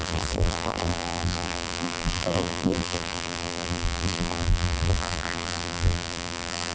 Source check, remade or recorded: remade